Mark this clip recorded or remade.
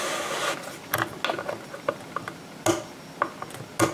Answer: recorded